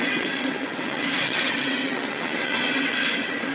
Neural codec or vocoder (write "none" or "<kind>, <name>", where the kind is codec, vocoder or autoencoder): vocoder, WaveNeXt